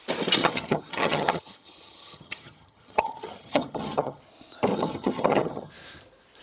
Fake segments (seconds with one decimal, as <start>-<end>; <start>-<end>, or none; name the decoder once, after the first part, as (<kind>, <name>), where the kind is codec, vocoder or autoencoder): 0.4-4.2 (vocoder, HiFi-GAN); 4.7-5.7